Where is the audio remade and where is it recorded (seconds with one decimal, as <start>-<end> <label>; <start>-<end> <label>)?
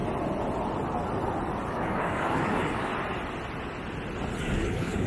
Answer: 0.0-1.7 recorded; 1.7-2.9 remade; 2.9-4.4 recorded; 4.4-5.1 remade